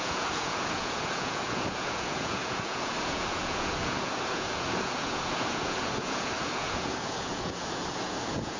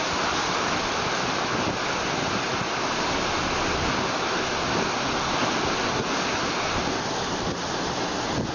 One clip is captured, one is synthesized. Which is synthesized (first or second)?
first